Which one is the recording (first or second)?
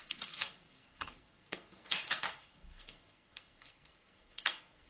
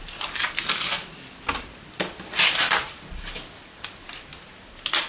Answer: second